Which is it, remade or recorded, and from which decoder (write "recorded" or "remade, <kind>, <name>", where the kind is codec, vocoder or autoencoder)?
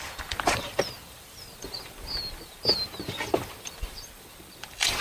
remade, vocoder, BigVGAN v2